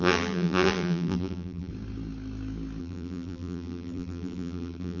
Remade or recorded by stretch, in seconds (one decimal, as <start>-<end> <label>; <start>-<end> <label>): 0.0-1.7 remade; 1.7-2.8 recorded; 2.8-5.0 remade